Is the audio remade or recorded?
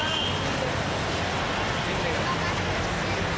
recorded